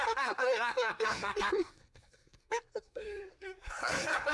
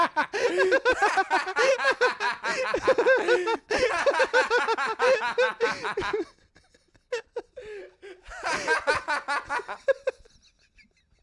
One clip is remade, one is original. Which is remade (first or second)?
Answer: first